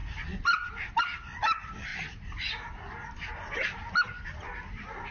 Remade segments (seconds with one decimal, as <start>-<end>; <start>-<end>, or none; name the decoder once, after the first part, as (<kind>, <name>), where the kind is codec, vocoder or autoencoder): none

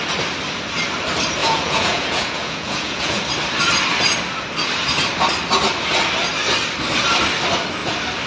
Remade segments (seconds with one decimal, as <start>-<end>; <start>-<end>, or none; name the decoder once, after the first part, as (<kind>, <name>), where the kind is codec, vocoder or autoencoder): 1.4-3.2 (vocoder, Vocos)

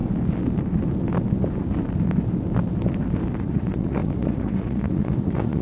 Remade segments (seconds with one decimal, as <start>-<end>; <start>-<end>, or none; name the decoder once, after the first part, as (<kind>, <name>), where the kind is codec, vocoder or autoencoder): 3.4-5.6 (vocoder, Vocos)

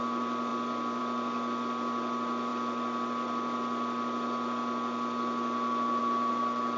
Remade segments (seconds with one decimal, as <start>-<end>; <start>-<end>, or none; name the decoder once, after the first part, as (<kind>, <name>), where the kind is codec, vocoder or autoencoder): none

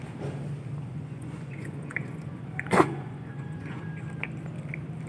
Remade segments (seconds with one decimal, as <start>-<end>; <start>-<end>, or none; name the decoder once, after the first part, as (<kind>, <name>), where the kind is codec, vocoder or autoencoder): 0.9-3.8 (vocoder, Vocos)